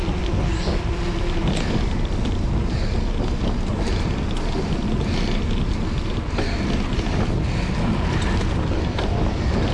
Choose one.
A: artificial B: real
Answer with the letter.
B